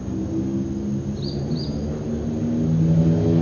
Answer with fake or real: real